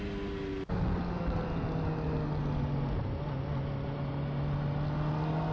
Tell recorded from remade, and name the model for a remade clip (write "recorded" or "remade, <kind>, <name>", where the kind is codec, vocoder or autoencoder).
recorded